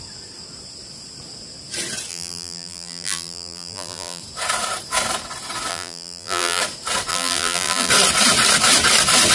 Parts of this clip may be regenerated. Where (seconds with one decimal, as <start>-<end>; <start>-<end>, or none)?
2.1-4.2; 5.7-6.6; 7.1-7.9